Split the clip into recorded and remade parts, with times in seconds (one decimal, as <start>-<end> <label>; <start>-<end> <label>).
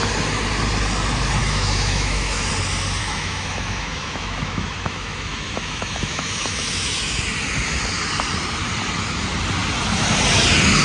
0.0-1.4 recorded; 1.4-2.5 remade; 2.5-3.0 recorded; 3.0-7.2 remade; 7.2-10.8 recorded